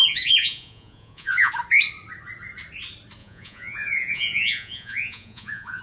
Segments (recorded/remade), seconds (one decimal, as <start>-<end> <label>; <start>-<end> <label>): 0.0-1.5 remade; 1.5-3.2 recorded; 3.2-5.8 remade